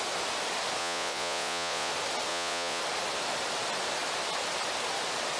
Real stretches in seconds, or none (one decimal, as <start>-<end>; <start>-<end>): 0.0-0.8; 1.9-2.3; 2.8-5.4